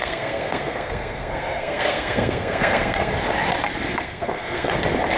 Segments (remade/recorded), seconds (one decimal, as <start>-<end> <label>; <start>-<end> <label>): 0.0-3.1 remade; 3.1-3.9 recorded; 3.9-4.8 remade; 4.8-5.2 recorded